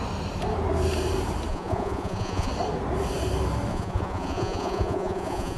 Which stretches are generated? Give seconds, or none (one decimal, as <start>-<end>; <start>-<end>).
1.5-2.5; 3.7-5.6